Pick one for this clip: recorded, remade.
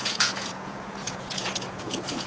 remade